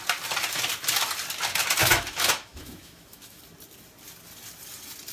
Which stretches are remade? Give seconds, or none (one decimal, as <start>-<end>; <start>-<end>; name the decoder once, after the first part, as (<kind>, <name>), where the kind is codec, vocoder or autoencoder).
1.8-3.4 (autoencoder, DAC-VAE)